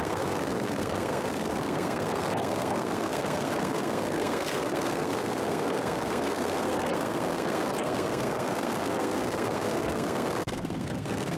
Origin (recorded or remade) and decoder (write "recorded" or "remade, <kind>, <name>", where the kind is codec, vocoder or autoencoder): remade, codec, SNAC